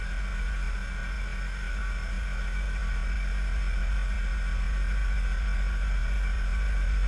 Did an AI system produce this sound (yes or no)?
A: no